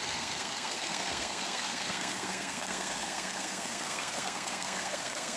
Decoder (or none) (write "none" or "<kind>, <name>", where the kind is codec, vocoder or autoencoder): codec, SNAC